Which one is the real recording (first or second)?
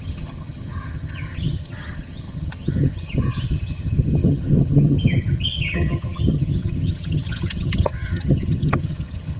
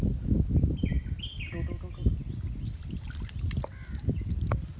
second